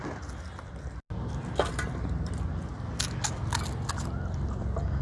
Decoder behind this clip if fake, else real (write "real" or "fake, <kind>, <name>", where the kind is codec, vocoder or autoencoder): real